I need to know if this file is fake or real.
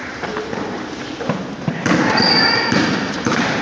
fake